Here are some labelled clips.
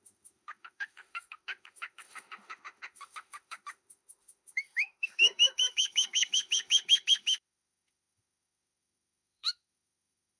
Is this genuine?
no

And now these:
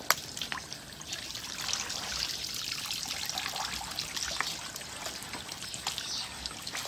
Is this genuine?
yes